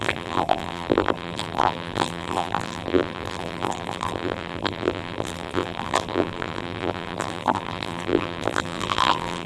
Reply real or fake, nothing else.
fake